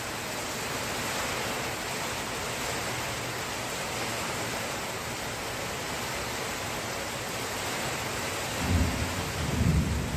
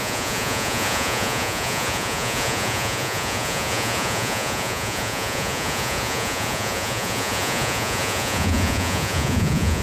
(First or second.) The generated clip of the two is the second